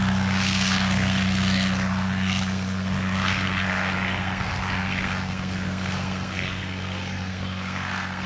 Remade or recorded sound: remade